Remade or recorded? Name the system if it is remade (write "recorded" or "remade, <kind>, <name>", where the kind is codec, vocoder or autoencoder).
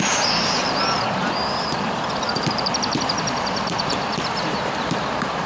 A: remade, vocoder, BigVGAN v2